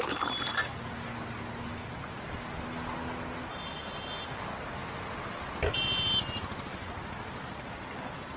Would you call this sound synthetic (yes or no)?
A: no